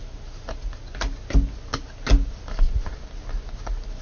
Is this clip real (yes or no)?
yes